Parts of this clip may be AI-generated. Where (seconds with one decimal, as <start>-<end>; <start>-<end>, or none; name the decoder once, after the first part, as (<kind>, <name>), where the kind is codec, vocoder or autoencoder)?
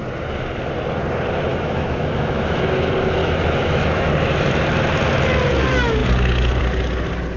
1.5-2.6 (autoencoder, DAC-VAE); 3.2-4.1